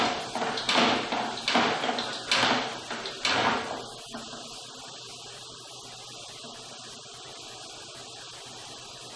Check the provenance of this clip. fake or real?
real